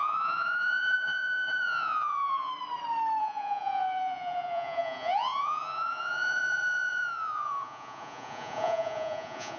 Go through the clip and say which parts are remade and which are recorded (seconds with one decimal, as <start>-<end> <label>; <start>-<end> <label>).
0.0-2.5 remade; 2.5-3.2 recorded; 3.2-9.6 remade